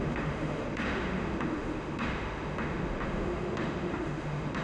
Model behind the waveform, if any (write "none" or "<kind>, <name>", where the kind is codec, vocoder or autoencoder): autoencoder, DAC-VAE